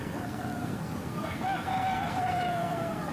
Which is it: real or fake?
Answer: fake